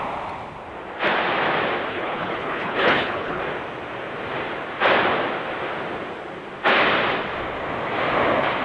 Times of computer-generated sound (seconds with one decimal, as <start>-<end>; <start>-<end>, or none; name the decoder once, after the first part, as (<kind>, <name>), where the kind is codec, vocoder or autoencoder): 1.9-3.4 (codec, HILCodec)